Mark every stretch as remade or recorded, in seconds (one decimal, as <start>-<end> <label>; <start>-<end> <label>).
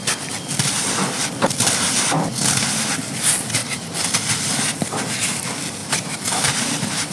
0.0-5.8 recorded; 5.8-7.1 remade